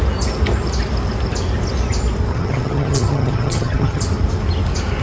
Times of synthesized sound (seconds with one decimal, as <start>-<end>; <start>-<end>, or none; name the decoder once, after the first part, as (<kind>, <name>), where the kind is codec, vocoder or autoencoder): 2.3-4.0 (vocoder, HiFi-GAN)